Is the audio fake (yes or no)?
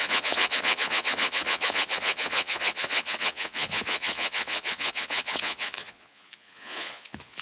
yes